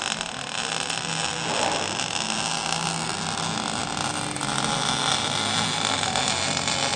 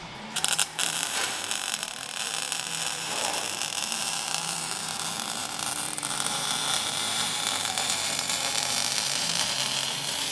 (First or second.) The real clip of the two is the first